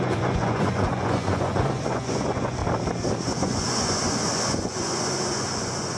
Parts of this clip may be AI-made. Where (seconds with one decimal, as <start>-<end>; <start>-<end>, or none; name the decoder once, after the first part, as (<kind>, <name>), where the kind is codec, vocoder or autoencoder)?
0.0-2.6 (vocoder, Vocos); 3.2-6.0